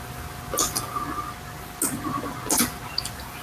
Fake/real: real